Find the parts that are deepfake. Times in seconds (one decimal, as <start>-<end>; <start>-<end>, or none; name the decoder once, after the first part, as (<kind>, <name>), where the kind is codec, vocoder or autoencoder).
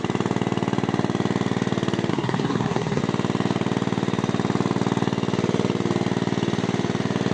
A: 2.1-3.0 (codec, SNAC)